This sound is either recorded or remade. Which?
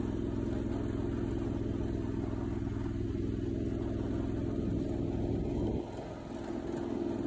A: recorded